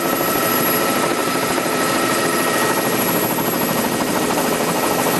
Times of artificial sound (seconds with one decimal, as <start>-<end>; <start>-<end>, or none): 1.2-2.2